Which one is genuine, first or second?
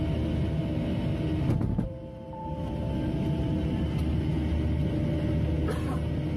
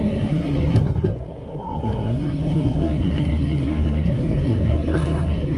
first